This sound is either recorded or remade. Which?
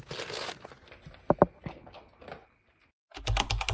recorded